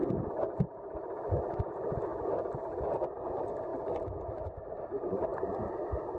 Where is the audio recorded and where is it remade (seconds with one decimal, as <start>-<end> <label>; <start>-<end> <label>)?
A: 0.0-2.1 recorded; 2.1-2.8 remade; 2.8-5.3 recorded; 5.3-6.2 remade